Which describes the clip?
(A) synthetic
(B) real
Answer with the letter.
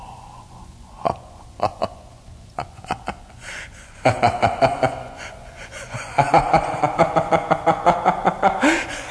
A